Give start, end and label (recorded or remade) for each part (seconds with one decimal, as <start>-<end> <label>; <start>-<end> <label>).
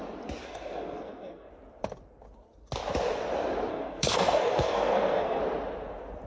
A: 0.0-0.4 recorded; 0.4-1.5 remade; 1.5-3.7 recorded; 3.7-5.4 remade; 5.4-6.3 recorded